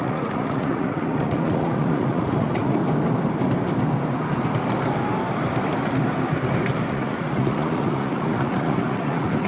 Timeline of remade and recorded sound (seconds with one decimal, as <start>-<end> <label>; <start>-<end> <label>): 0.0-2.8 remade; 2.8-6.7 recorded; 6.7-9.5 remade